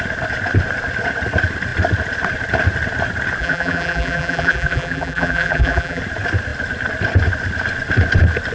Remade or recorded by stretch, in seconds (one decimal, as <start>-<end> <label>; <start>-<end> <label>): 0.0-3.4 recorded; 3.4-6.0 remade; 6.0-8.5 recorded